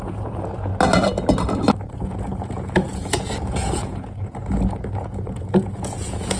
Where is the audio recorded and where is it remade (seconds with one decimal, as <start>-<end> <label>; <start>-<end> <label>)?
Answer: 0.0-0.7 remade; 0.7-1.9 recorded; 1.9-6.4 remade

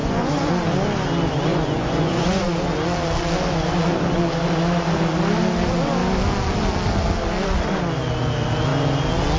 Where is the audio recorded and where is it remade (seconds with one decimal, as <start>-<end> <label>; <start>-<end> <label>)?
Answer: 0.0-0.5 remade; 0.5-1.5 recorded; 1.5-2.6 remade; 2.6-9.4 recorded

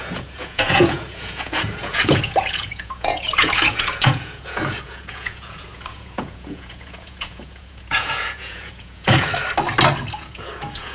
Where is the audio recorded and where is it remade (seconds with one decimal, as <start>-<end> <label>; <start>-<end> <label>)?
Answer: 0.0-9.3 remade; 9.3-10.1 recorded; 10.1-10.9 remade

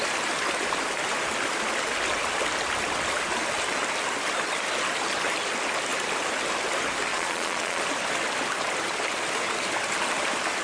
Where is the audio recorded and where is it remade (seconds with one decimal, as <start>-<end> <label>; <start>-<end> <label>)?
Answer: 0.0-7.1 recorded; 7.1-7.8 remade; 7.8-10.6 recorded

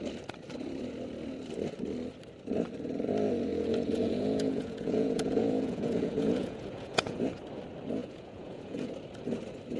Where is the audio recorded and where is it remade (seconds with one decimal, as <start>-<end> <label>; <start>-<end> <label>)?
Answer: 0.0-3.5 recorded; 3.5-7.2 remade; 7.2-8.0 recorded; 8.0-8.9 remade; 8.9-9.8 recorded

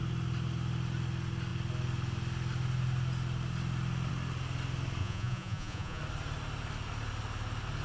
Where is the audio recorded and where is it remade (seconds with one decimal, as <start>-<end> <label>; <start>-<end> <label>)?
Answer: 0.0-5.0 recorded; 5.0-6.0 remade; 6.0-7.8 recorded

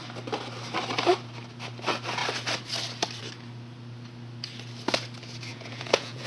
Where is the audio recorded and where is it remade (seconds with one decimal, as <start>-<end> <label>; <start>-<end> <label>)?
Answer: 0.0-5.5 recorded; 5.5-6.3 remade

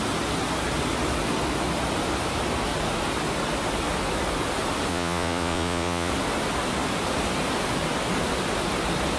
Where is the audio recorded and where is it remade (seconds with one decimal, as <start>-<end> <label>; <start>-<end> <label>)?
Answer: 0.0-4.9 recorded; 4.9-6.1 remade; 6.1-9.2 recorded